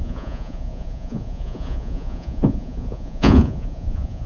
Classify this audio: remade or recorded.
remade